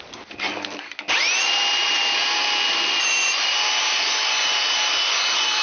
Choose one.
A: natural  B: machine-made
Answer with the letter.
A